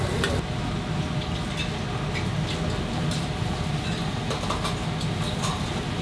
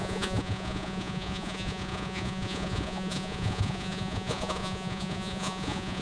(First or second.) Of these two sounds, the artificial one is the second